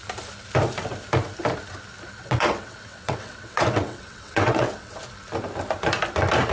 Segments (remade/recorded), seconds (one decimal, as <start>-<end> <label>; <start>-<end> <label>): 0.0-2.2 recorded; 2.2-5.0 remade; 5.0-6.5 recorded